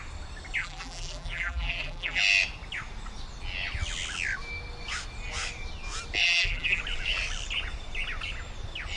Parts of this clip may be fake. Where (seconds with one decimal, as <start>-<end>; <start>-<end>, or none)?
0.6-2.2; 6.2-6.8